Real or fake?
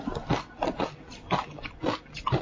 real